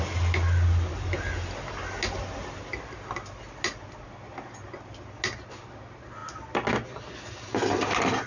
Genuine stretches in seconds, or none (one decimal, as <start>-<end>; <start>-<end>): 0.0-8.3

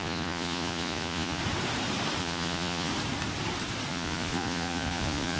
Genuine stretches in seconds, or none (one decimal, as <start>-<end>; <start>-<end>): 1.4-2.2; 2.9-3.9

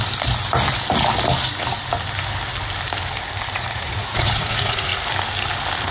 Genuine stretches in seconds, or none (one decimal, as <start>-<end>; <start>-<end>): 0.0-3.5; 4.9-5.9

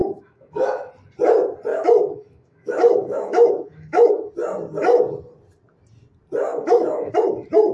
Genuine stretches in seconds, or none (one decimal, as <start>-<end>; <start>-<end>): 0.9-1.7; 4.3-6.5; 7.1-7.7

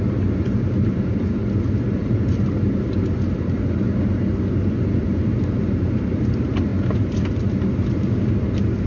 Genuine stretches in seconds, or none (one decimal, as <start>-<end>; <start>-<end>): 0.0-1.4; 2.2-6.7

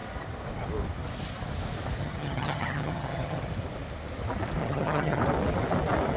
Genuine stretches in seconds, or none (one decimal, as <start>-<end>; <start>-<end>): 0.0-2.0; 3.4-4.6; 5.2-6.2